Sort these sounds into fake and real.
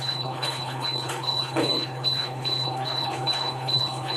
fake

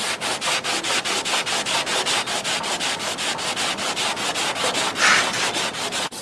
real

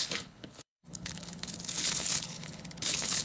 fake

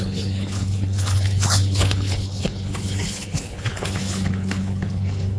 fake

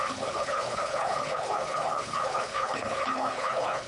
fake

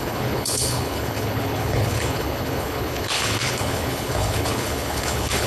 fake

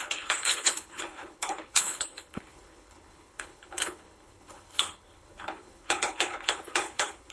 fake